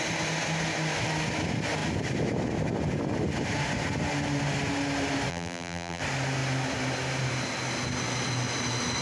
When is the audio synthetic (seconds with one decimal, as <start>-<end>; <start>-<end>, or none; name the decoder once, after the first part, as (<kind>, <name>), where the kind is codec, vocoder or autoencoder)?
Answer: 5.3-6.0 (vocoder, BigVGAN v2)